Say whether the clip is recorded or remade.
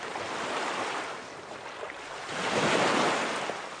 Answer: recorded